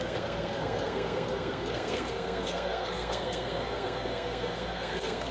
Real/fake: fake